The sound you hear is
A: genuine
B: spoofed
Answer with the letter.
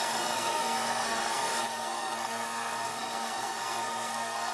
B